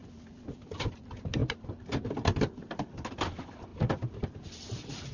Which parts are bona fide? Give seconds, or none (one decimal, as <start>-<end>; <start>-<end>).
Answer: 0.9-1.4; 2.0-3.7